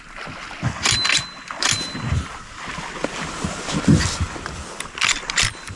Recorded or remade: recorded